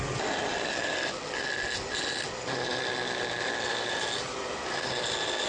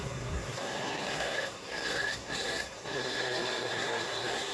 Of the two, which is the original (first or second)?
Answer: first